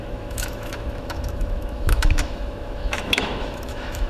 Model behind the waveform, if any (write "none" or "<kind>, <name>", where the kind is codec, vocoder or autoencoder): autoencoder, DAC-VAE